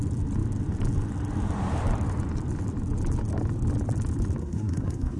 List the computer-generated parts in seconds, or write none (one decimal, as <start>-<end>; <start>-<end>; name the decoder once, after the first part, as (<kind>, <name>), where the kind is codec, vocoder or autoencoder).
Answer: 4.4-5.2 (codec, SNAC)